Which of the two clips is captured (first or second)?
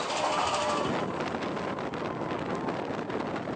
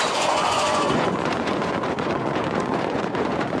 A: first